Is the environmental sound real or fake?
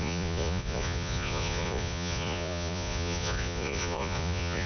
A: fake